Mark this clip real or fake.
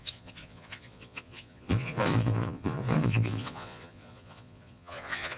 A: fake